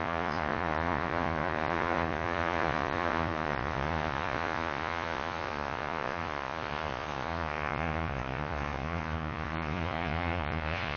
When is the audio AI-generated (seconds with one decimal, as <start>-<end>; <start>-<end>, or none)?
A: 0.0-11.0